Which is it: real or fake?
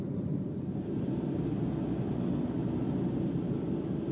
real